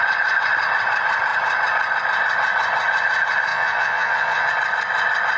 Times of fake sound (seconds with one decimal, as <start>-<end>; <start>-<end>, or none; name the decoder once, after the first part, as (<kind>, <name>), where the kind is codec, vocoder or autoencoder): 3.5-4.5 (vocoder, Vocos)